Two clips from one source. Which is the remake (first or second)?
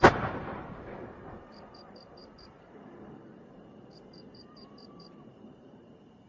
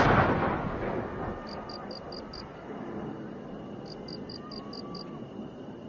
first